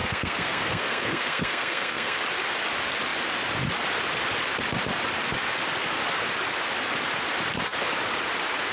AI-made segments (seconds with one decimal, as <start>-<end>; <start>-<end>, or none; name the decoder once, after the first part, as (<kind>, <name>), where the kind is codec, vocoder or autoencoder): 0.0-2.2 (codec, SNAC)